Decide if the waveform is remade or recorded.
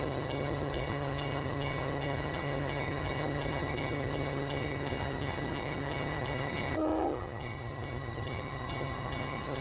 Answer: remade